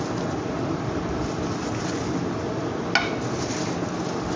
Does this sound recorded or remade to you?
recorded